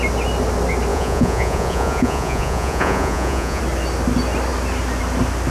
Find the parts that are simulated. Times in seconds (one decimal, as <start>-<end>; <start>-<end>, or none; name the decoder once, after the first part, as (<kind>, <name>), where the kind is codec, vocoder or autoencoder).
0.9-3.6 (vocoder, Vocos)